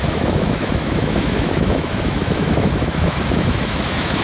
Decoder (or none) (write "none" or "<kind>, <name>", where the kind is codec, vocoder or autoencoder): autoencoder, DAC-VAE